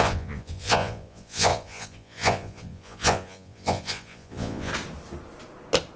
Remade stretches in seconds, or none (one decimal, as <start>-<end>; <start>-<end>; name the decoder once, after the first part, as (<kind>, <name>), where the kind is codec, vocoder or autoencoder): 0.0-4.7 (vocoder, Vocos)